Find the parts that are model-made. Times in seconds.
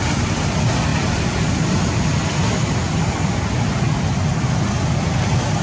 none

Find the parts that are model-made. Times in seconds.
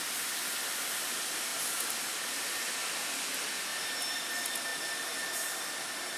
2.8-3.3 (vocoder, BigVGAN v2)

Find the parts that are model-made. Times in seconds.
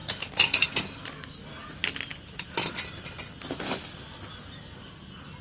none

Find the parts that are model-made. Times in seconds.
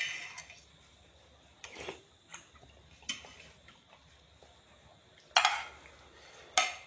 none